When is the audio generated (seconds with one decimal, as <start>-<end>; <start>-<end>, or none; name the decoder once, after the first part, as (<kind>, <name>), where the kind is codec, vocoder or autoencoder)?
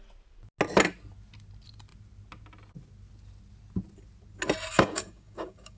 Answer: 4.7-5.8 (codec, DAC)